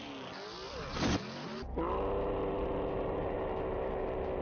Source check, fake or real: real